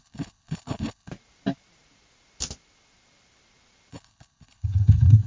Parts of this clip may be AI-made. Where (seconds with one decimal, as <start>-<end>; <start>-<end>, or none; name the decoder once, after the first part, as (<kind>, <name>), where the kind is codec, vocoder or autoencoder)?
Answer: 0.0-1.1 (codec, HILCodec); 3.9-5.3

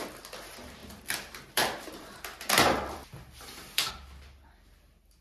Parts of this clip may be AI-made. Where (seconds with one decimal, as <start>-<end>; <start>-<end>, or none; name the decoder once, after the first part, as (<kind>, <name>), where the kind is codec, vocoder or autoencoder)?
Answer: 0.8-3.9 (vocoder, BigVGAN v2)

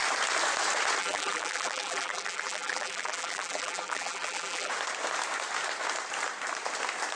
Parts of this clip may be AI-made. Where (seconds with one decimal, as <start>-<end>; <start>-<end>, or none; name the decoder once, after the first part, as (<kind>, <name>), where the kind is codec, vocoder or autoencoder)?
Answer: 1.0-4.7 (vocoder, BigVGAN v2)

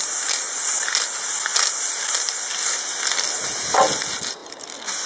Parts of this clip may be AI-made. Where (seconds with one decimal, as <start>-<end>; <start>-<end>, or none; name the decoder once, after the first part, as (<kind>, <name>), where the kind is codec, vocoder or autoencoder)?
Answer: none

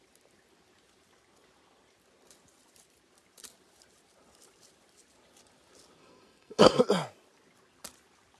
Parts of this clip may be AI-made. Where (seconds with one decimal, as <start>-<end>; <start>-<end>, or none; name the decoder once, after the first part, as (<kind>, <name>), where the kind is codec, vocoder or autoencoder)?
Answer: 6.0-6.8 (codec, SNAC)

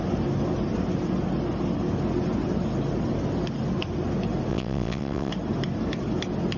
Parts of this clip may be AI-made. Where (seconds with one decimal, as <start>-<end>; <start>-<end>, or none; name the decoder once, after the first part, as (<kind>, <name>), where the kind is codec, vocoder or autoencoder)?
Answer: 4.5-5.3 (vocoder, WaveNeXt)

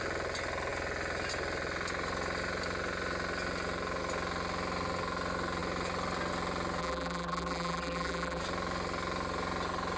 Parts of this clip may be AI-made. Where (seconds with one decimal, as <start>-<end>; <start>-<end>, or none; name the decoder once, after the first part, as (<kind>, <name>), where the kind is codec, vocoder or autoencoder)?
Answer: 6.8-8.4 (vocoder, BigVGAN v2)

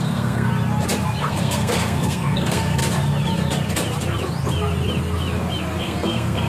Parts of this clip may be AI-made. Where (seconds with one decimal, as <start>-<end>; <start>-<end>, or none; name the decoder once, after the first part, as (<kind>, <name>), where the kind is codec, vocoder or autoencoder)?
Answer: 0.0-0.5 (codec, SNAC); 1.2-2.8; 5.8-6.5